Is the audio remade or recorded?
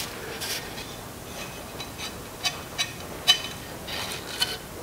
recorded